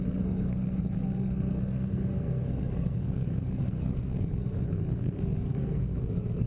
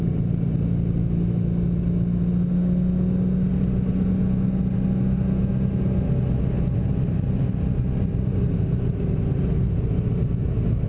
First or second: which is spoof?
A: first